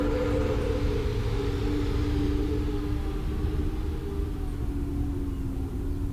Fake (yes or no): no